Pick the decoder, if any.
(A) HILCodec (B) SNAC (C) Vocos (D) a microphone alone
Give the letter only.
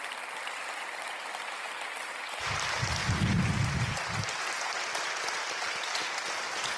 D